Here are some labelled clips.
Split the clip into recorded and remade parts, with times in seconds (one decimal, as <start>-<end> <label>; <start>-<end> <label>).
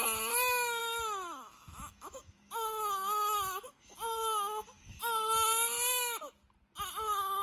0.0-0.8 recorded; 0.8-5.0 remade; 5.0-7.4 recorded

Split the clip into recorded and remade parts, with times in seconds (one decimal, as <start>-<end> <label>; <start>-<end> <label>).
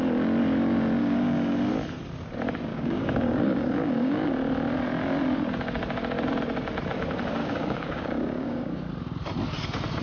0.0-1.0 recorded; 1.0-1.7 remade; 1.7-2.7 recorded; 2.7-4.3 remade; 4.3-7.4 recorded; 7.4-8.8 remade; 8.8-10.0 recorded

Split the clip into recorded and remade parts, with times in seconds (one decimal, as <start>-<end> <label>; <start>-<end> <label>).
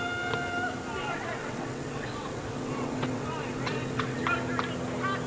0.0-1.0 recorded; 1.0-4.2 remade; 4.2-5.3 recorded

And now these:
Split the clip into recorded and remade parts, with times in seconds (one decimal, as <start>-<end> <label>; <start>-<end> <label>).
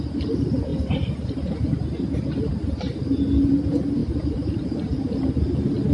0.0-4.0 recorded; 4.0-5.3 remade; 5.3-5.9 recorded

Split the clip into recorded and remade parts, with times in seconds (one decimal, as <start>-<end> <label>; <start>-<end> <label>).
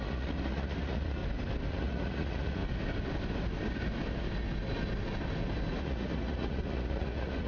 0.0-1.2 remade; 1.2-1.7 recorded; 1.7-2.6 remade; 2.6-5.8 recorded; 5.8-7.5 remade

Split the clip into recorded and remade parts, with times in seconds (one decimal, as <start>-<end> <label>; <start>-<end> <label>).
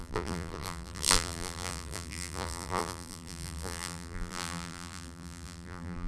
0.0-6.1 remade